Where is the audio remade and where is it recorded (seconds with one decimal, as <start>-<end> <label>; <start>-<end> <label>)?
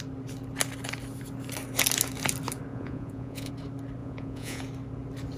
0.0-2.7 recorded; 2.7-3.5 remade; 3.5-4.0 recorded; 4.0-4.6 remade; 4.6-5.4 recorded